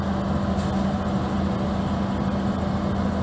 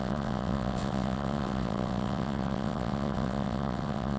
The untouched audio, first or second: first